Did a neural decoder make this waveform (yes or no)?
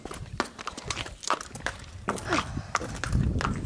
no